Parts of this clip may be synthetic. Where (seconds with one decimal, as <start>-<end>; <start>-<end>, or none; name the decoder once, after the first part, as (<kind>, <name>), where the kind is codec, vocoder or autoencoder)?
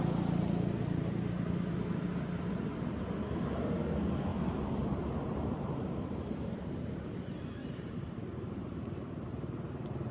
4.3-7.1 (vocoder, BigVGAN v2); 7.6-10.1